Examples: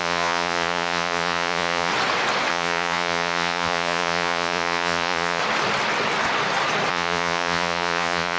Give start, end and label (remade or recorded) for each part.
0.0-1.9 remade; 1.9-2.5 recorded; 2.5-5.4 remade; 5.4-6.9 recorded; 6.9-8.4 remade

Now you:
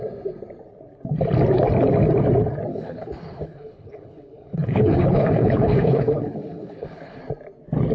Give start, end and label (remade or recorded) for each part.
0.0-2.7 recorded; 2.7-7.2 remade; 7.2-7.9 recorded

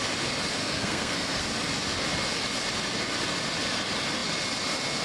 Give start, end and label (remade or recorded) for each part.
0.0-0.6 recorded; 0.6-1.4 remade; 1.4-5.0 recorded

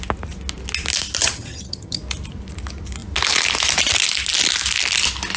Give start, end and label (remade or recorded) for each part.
0.0-1.2 recorded; 1.2-2.0 remade; 2.0-5.4 recorded

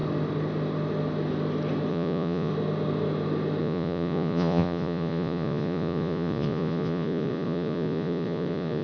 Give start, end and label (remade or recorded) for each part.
0.0-1.9 recorded; 1.9-2.5 remade; 2.5-3.6 recorded; 3.6-8.8 remade

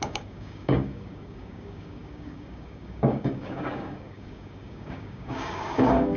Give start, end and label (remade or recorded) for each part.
0.0-6.2 remade